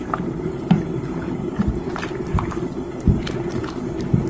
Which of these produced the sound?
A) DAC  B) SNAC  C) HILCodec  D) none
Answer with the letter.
D